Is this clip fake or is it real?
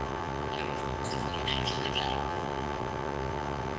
fake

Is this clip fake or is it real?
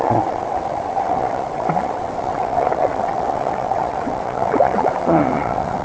fake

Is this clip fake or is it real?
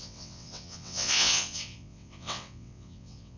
fake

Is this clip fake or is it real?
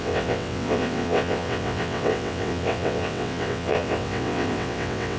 fake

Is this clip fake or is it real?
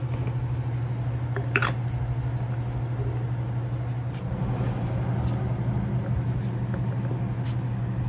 real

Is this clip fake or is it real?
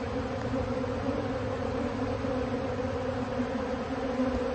real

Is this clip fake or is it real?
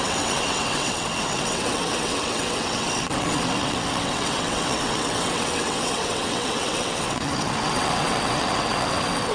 fake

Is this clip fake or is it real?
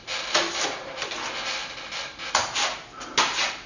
real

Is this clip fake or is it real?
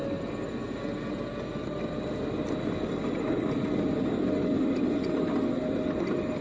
real